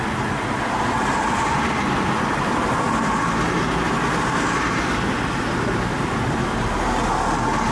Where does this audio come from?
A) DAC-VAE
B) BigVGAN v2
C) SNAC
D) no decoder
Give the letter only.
D